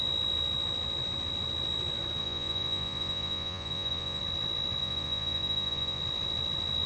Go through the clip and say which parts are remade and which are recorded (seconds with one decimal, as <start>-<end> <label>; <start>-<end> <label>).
0.0-2.2 recorded; 2.2-4.2 remade; 4.2-4.8 recorded; 4.8-6.0 remade; 6.0-6.9 recorded